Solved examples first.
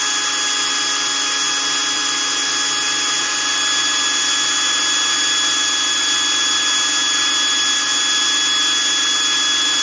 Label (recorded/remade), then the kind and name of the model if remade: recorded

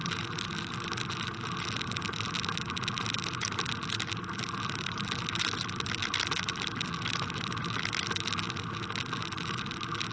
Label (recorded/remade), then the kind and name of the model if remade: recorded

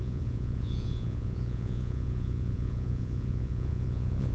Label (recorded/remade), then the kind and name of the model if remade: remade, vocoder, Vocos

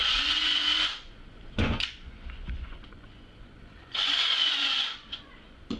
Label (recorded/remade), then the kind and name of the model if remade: remade, vocoder, Vocos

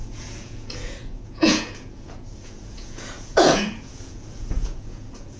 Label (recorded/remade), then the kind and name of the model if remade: remade, vocoder, Vocos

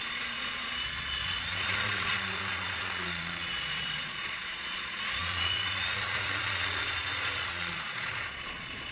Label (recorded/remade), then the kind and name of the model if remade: remade, vocoder, Vocos